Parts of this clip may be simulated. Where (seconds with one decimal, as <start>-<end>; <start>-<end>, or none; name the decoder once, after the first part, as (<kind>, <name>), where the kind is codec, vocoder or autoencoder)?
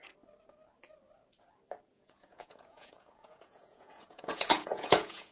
1.9-5.3 (vocoder, Vocos)